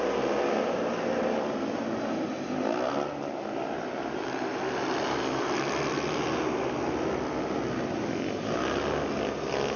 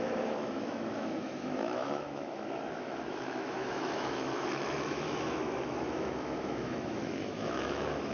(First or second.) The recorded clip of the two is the first